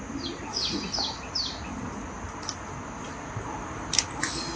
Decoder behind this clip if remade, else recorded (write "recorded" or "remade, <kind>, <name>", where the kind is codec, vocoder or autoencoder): recorded